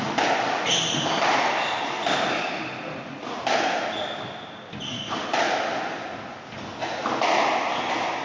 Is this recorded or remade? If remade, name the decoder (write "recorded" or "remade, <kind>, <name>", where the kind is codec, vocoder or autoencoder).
recorded